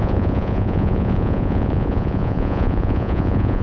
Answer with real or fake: fake